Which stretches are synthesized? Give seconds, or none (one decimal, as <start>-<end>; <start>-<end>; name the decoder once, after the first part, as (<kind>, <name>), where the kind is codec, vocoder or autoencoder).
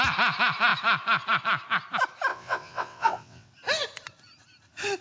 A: 2.3-3.5 (vocoder, WaveNeXt)